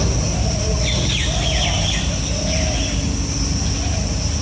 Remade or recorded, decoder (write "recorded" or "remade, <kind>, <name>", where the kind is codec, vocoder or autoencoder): recorded